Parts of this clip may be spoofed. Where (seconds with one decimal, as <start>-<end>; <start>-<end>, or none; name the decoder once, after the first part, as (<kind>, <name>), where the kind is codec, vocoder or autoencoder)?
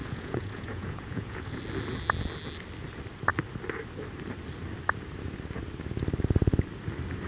0.0-1.6 (vocoder, Vocos)